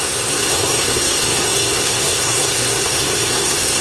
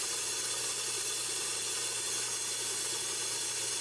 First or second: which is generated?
first